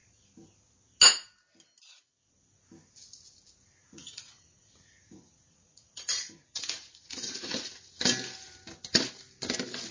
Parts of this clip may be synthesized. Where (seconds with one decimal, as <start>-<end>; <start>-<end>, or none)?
3.8-8.0